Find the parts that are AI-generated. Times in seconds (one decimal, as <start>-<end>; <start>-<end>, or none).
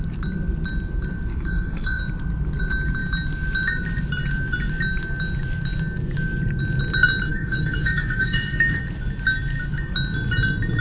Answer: 1.3-2.0; 7.3-8.8